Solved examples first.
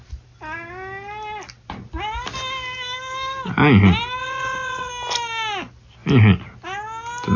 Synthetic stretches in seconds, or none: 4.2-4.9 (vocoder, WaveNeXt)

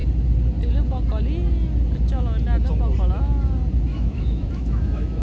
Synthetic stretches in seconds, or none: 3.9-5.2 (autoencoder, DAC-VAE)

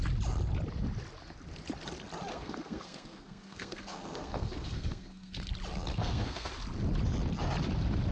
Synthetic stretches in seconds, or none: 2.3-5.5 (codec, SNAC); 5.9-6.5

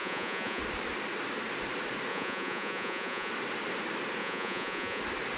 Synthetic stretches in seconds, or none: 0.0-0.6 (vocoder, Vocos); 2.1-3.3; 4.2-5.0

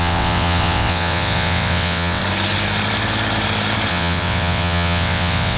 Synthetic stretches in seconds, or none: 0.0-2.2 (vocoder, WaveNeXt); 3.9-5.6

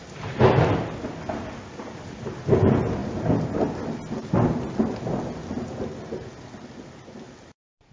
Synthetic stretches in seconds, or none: none